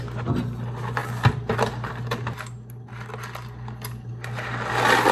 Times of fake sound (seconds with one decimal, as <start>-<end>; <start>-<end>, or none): none